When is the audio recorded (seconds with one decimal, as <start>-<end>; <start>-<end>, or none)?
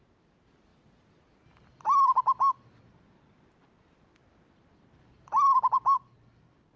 0.7-2.8